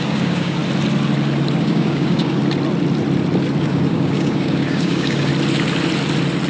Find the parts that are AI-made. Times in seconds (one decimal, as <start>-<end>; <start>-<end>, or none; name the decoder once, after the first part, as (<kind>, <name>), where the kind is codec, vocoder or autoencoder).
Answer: 0.0-0.6 (codec, DAC); 1.6-2.4; 3.6-5.3